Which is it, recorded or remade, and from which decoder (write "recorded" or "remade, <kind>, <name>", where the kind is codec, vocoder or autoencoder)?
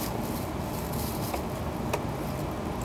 recorded